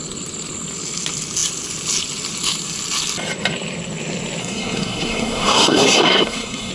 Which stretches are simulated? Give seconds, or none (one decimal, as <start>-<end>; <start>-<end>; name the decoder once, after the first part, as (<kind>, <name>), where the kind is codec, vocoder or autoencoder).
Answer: 4.4-6.7 (codec, SNAC)